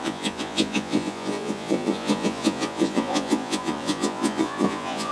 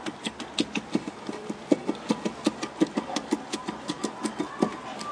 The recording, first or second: second